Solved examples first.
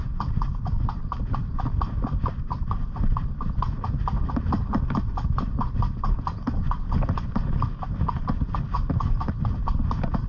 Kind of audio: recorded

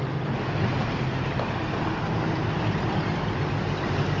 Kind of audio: recorded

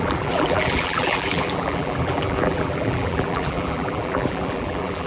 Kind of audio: remade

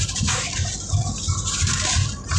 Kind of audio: recorded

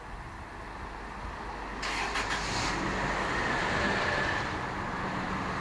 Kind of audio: recorded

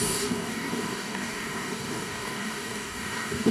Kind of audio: remade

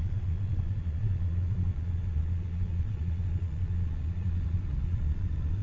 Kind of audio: remade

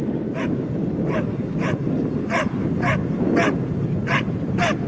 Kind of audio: recorded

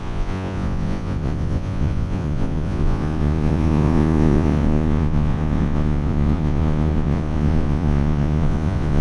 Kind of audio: remade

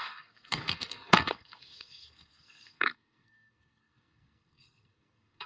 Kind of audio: remade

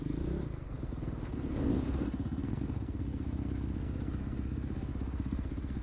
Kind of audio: remade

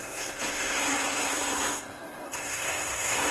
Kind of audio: remade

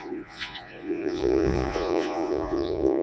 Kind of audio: remade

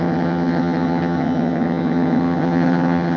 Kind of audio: remade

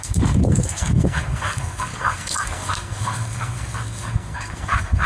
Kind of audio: remade